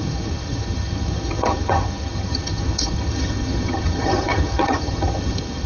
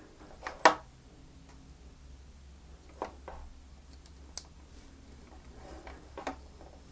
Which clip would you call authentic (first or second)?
second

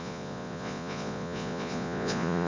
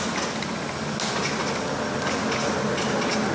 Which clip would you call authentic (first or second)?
second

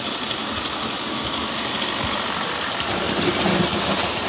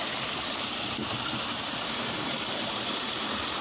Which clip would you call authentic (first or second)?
first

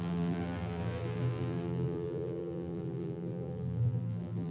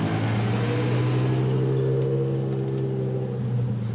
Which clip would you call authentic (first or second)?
second